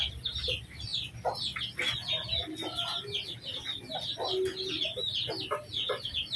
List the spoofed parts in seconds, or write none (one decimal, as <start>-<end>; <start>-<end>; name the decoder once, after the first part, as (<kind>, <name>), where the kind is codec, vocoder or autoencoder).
none